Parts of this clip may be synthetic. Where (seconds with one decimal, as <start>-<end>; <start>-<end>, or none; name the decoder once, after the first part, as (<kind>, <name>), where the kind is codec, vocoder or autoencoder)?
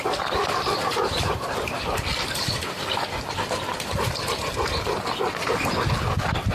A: none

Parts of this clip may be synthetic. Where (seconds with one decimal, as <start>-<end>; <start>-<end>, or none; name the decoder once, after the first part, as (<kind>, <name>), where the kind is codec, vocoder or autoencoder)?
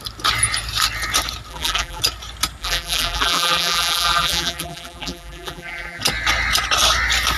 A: 1.5-2.0 (vocoder, BigVGAN v2); 2.6-6.0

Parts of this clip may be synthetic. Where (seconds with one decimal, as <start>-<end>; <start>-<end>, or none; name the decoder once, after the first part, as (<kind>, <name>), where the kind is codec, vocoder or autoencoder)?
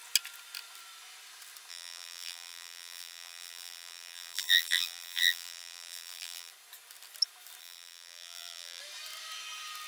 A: 1.7-6.5 (vocoder, BigVGAN v2); 7.6-8.8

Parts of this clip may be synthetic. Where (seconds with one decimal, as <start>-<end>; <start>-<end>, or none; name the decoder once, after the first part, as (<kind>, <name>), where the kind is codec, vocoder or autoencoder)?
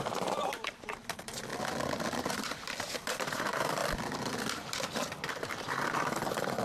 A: 0.0-1.5 (vocoder, BigVGAN v2); 2.3-3.8; 5.2-6.6